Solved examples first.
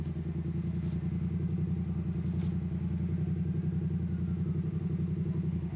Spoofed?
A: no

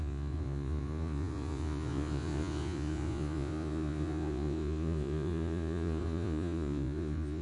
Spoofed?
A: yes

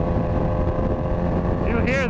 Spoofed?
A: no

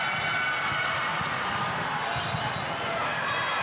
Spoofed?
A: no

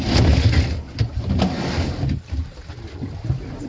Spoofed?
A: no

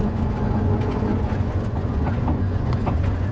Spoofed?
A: yes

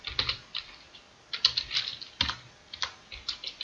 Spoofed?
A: no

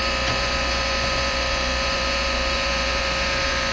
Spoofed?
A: yes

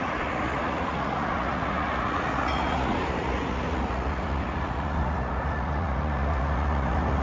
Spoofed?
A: yes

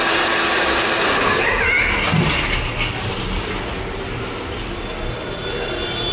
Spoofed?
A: no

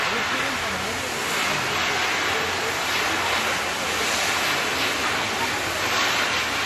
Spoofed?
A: no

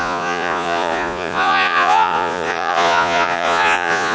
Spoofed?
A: yes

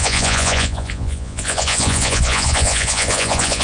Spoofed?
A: yes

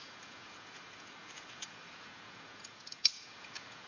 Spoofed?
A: yes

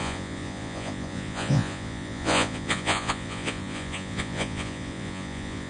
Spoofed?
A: yes